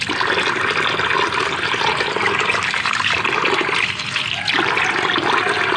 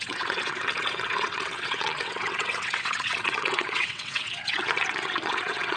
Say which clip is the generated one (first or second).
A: second